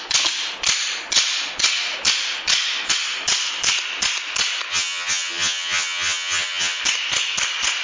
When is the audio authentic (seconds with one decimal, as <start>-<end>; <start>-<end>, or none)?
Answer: 0.0-4.7; 6.8-7.8